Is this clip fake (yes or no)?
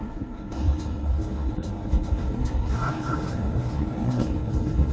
yes